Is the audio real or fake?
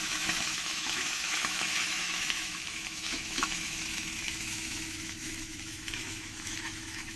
fake